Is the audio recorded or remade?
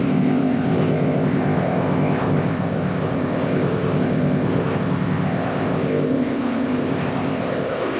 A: remade